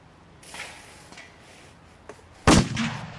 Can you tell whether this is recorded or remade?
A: recorded